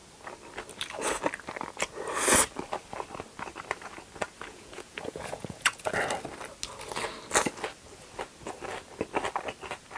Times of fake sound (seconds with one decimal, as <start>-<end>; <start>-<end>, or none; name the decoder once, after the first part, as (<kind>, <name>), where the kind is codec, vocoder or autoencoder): 4.5-5.9 (vocoder, Vocos)